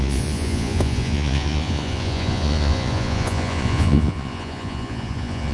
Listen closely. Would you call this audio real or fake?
fake